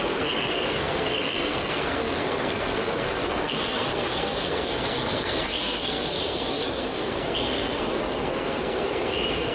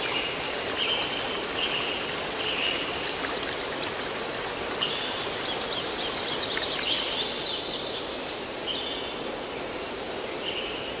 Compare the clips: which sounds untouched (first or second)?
second